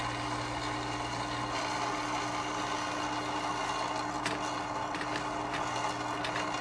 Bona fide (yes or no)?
yes